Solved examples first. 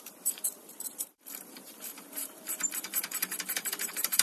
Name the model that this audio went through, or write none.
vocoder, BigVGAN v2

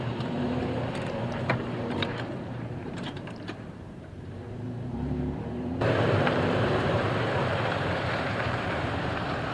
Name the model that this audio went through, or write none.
vocoder, BigVGAN v2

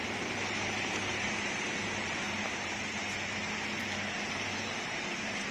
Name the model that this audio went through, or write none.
vocoder, BigVGAN v2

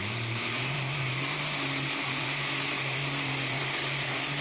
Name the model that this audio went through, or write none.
vocoder, BigVGAN v2